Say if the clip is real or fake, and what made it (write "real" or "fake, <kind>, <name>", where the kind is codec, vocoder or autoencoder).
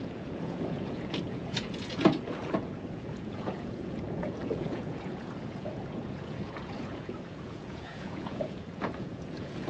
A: fake, vocoder, Vocos